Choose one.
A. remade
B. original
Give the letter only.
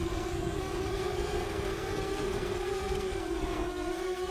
A